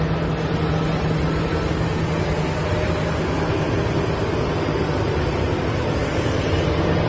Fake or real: real